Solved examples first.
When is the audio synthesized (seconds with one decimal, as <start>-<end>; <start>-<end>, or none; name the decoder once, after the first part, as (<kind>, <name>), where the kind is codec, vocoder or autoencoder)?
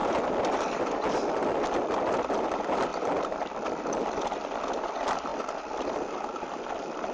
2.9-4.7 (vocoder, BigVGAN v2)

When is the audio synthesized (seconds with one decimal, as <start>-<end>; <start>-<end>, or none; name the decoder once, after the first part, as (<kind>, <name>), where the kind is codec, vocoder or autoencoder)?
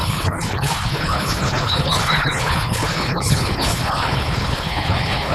0.0-5.3 (codec, HILCodec)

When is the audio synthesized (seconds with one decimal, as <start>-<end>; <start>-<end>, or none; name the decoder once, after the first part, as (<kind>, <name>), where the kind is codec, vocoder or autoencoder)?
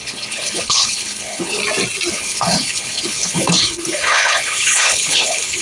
0.0-1.6 (codec, HILCodec); 2.1-5.6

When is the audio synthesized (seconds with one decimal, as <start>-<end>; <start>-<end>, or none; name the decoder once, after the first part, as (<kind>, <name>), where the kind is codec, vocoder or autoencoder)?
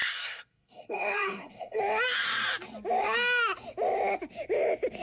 0.0-1.8 (codec, SNAC)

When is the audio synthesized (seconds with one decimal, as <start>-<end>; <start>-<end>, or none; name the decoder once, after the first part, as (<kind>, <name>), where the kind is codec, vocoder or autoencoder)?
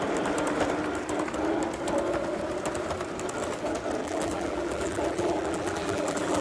4.0-6.4 (vocoder, BigVGAN v2)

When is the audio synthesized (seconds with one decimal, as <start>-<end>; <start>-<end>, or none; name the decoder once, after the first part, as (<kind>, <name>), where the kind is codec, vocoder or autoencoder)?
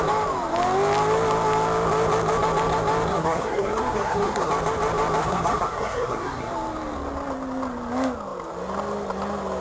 3.1-4.5 (codec, SNAC); 5.2-6.5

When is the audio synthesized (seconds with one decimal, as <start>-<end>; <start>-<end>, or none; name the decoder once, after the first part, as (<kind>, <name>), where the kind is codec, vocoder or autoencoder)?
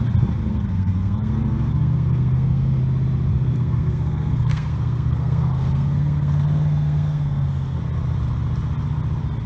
0.5-2.8 (codec, SNAC); 3.3-7.8